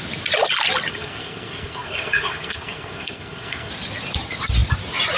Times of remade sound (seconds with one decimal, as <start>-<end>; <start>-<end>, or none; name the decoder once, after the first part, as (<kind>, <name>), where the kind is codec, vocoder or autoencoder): 0.9-3.7 (codec, SNAC)